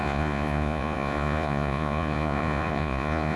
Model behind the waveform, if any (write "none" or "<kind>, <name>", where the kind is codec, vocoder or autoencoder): vocoder, Vocos